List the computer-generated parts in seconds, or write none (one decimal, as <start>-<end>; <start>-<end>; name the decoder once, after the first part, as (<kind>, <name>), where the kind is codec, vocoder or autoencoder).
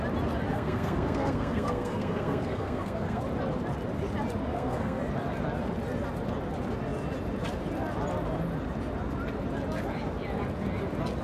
0.5-3.2 (codec, SNAC); 4.5-5.0